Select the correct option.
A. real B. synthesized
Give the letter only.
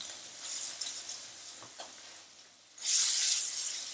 A